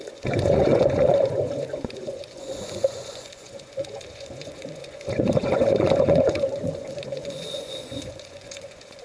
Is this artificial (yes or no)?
yes